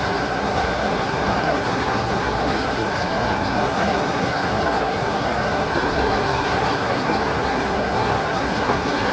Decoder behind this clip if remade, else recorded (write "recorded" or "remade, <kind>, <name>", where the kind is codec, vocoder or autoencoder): remade, codec, SNAC